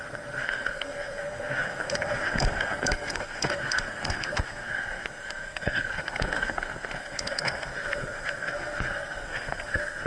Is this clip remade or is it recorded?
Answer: remade